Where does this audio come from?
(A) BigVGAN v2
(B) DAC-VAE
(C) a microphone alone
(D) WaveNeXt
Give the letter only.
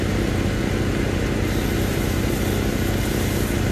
A